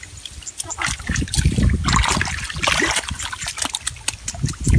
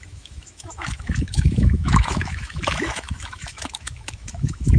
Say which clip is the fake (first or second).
second